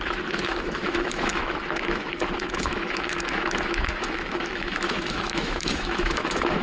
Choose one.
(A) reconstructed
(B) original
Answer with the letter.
A